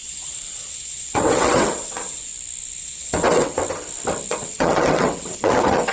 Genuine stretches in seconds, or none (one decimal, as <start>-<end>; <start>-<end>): 2.3-2.8; 3.6-4.3